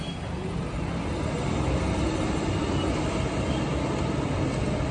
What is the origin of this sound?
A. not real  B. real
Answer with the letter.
B